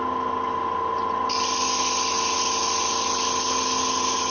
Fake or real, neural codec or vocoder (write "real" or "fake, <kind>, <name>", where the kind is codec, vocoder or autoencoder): real